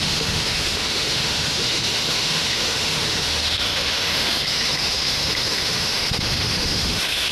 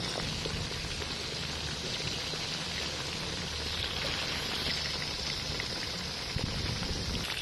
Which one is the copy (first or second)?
first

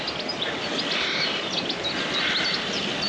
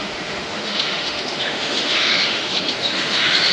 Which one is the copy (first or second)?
second